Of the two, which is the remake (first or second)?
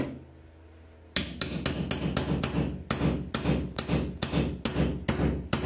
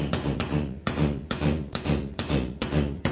second